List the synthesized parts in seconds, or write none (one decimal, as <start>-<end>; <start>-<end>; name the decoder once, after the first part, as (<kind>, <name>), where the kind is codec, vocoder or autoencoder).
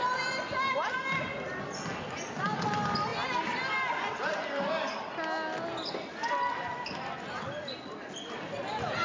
none